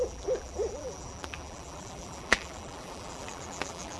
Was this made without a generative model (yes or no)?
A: no